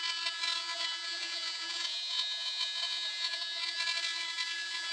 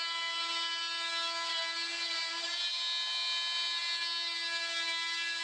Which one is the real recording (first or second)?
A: second